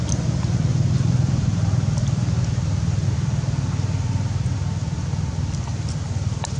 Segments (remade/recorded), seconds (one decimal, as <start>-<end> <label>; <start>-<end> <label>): 0.0-6.6 remade